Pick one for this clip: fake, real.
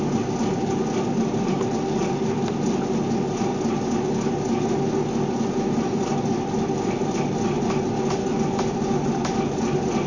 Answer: real